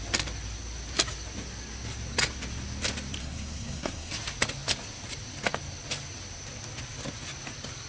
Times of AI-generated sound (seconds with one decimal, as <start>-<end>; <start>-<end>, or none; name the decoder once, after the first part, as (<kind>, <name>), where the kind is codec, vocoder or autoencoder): 3.2-4.1 (codec, SNAC)